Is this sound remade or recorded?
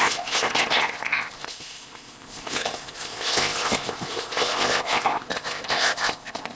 remade